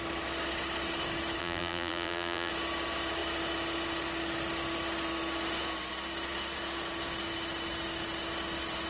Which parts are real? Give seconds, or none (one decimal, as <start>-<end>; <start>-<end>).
0.0-1.4; 2.5-8.9